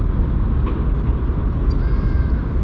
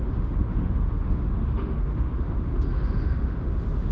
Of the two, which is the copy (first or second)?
second